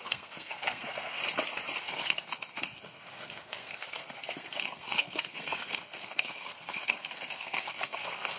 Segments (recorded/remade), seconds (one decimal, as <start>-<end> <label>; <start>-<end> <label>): 0.0-1.2 remade; 1.2-1.8 recorded; 1.8-8.4 remade